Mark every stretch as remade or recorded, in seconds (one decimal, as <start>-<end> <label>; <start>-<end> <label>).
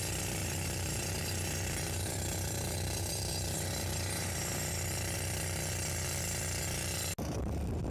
0.0-0.4 recorded; 0.4-4.7 remade; 4.7-7.9 recorded